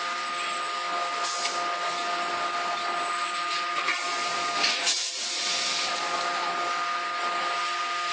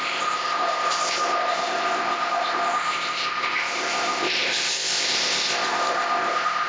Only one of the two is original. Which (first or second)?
first